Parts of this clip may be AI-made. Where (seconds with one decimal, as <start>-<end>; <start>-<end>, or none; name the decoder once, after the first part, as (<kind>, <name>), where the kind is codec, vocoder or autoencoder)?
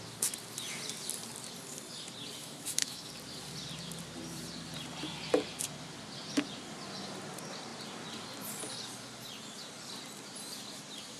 2.4-3.1 (autoencoder, DAC-VAE)